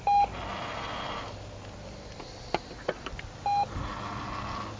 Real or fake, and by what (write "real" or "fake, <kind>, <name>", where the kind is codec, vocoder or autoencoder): real